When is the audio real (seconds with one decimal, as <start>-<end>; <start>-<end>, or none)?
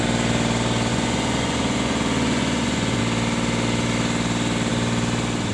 0.0-0.9; 3.0-5.5